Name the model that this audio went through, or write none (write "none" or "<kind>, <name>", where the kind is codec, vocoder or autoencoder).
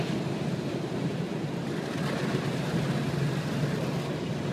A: none